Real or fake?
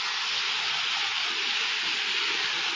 real